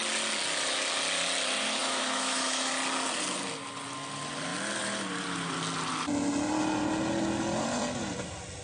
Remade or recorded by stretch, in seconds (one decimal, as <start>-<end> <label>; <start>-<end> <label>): 0.0-1.8 recorded; 1.8-2.7 remade; 2.7-8.6 recorded